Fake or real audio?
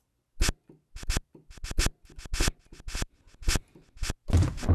real